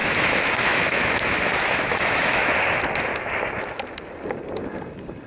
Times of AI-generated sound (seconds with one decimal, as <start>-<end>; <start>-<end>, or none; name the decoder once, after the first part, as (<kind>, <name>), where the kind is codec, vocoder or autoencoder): 0.0-2.5 (autoencoder, DAC-VAE); 3.1-3.8